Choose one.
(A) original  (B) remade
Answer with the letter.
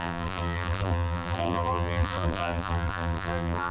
B